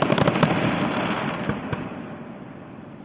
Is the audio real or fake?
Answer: real